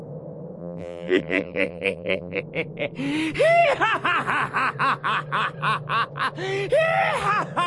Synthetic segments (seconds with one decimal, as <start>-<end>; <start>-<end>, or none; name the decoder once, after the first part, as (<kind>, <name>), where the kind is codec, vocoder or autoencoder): 0.6-2.4 (vocoder, BigVGAN v2)